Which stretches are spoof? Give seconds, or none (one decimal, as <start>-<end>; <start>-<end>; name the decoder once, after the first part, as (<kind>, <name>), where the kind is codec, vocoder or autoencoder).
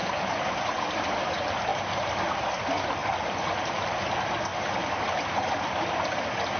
0.0-0.6 (vocoder, BigVGAN v2); 4.5-5.5